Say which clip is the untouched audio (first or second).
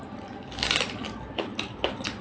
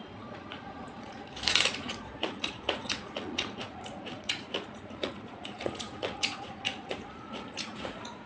first